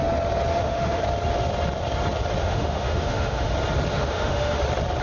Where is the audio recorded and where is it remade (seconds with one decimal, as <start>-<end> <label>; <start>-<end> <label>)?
0.0-0.5 recorded; 0.5-1.0 remade; 1.0-2.4 recorded; 2.4-3.5 remade; 3.5-3.9 recorded; 3.9-4.6 remade; 4.6-5.0 recorded